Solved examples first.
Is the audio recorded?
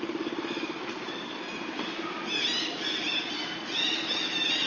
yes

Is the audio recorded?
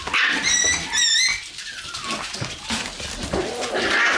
yes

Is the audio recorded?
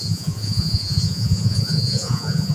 no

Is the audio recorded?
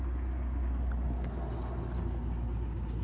yes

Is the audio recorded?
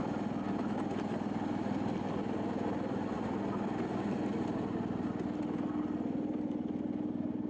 yes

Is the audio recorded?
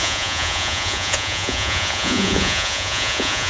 no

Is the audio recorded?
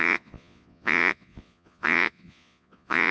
no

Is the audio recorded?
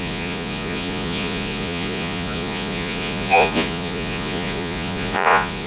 no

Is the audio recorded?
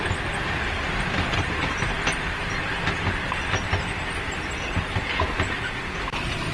yes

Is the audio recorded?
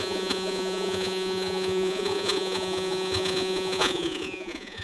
no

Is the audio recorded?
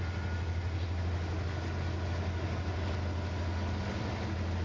yes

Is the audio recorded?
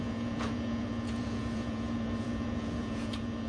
no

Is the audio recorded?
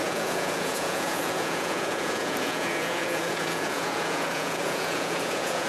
no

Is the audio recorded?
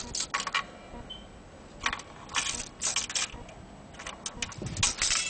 yes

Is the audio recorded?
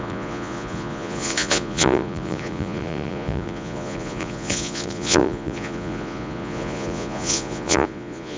no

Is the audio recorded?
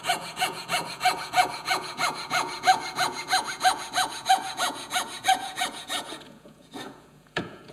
no